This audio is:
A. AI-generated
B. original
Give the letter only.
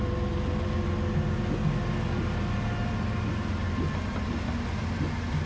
B